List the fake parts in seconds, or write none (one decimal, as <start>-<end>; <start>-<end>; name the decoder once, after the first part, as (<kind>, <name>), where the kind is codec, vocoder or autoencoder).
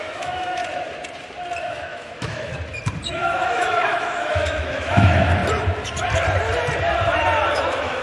0.0-0.6 (autoencoder, DAC-VAE); 1.6-2.5; 3.1-5.4; 7.5-8.0